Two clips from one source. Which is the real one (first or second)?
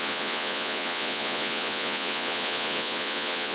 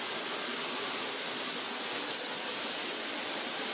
second